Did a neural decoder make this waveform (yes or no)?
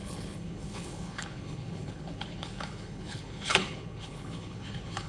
yes